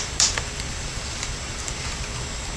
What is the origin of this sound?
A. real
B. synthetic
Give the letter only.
A